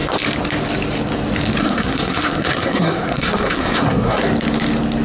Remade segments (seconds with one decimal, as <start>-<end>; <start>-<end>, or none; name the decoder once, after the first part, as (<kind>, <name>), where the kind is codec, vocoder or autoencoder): 1.6-4.2 (codec, SNAC)